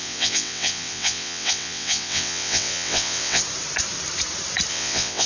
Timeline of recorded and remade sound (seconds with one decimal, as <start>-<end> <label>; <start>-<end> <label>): 0.0-3.4 remade; 3.4-4.7 recorded; 4.7-5.3 remade